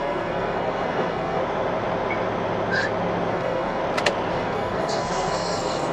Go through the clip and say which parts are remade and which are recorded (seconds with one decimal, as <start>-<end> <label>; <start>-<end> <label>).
0.0-1.4 remade; 1.4-3.3 recorded; 3.3-3.8 remade; 3.8-4.3 recorded; 4.3-5.9 remade

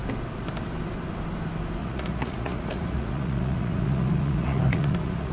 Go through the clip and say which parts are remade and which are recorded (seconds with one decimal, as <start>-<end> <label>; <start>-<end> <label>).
0.0-1.8 recorded; 1.8-5.3 remade

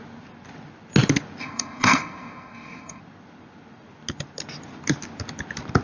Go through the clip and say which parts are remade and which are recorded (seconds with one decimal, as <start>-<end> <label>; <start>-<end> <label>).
0.0-1.4 recorded; 1.4-3.0 remade; 3.0-5.8 recorded

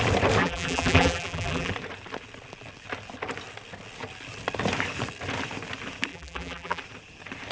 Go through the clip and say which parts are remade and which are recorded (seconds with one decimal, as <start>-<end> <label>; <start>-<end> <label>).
0.0-0.4 recorded; 0.4-1.7 remade; 1.7-6.1 recorded; 6.1-6.8 remade; 6.8-7.5 recorded

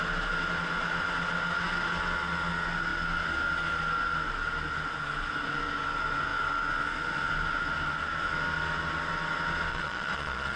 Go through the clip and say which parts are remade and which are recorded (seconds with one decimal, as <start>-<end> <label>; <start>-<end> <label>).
0.0-9.7 recorded; 9.7-10.6 remade